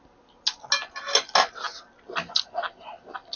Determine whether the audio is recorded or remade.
recorded